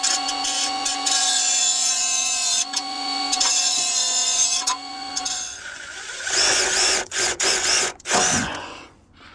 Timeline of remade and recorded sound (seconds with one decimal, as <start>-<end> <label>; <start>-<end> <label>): 0.0-9.3 remade